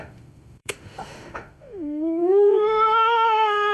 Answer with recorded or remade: remade